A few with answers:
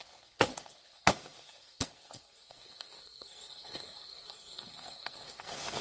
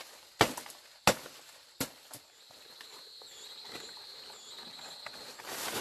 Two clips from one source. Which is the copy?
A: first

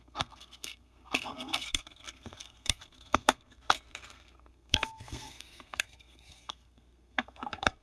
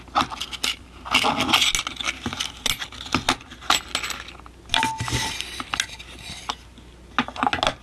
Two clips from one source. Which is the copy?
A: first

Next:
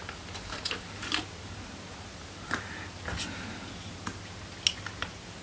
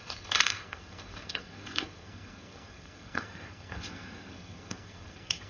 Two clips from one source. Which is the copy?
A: second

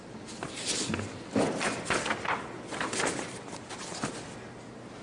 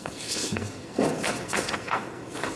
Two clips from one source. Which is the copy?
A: second